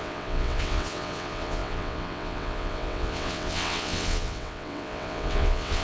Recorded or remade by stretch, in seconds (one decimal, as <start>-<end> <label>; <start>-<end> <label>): 0.0-5.8 remade